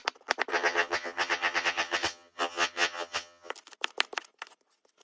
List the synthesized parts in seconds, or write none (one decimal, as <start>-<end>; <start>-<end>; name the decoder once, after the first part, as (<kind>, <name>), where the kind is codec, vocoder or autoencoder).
0.5-3.5 (vocoder, HiFi-GAN)